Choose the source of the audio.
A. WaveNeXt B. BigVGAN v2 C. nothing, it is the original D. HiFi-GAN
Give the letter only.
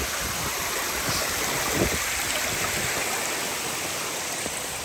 B